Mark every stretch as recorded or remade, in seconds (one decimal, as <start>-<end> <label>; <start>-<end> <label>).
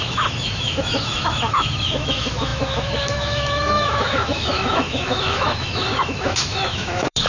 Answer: 0.0-7.3 remade